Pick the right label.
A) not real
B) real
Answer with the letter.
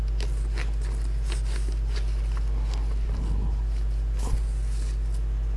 B